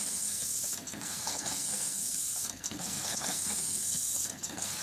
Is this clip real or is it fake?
fake